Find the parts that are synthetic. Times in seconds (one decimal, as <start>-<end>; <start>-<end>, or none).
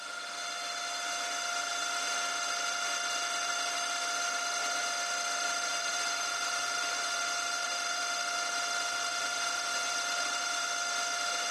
5.7-8.0; 9.1-10.6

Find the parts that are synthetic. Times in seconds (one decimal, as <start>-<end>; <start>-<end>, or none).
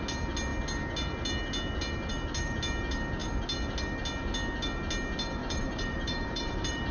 5.4-6.9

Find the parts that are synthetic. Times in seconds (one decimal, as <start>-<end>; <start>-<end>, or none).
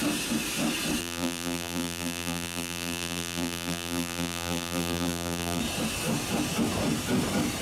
1.0-5.6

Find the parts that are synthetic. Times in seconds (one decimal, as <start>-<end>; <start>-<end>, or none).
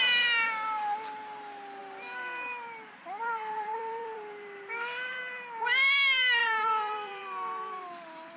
1.8-5.2; 6.4-7.8